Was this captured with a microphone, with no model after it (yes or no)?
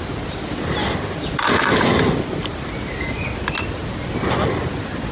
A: yes